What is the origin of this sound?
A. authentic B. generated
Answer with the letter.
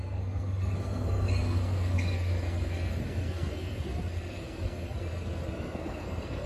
B